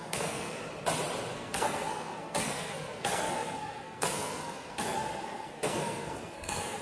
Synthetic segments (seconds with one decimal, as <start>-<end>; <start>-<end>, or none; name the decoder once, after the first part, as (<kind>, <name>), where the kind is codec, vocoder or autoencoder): 0.0-0.6 (codec, SNAC); 1.3-6.8